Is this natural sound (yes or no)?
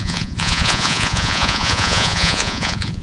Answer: no